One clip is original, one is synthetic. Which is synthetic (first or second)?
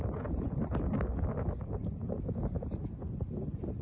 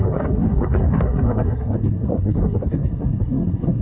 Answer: second